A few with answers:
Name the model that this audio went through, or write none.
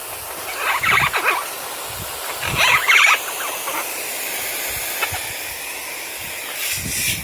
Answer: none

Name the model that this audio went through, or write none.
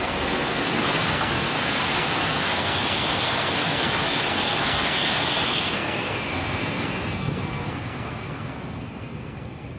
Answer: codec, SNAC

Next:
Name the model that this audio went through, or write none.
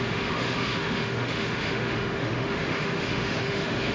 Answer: autoencoder, DAC-VAE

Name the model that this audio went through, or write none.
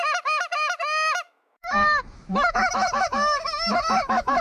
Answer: autoencoder, DAC-VAE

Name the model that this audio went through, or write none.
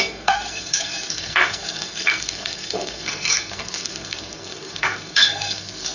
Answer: codec, SNAC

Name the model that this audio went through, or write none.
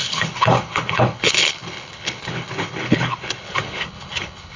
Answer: codec, HILCodec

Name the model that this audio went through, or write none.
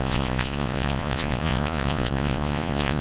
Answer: vocoder, Vocos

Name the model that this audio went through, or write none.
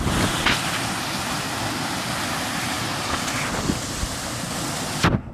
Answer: none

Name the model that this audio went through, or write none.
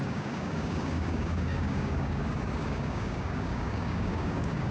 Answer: codec, DAC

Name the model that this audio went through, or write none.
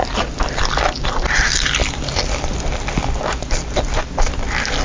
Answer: none